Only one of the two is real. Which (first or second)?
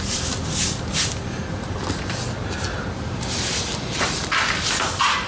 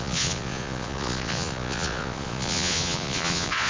first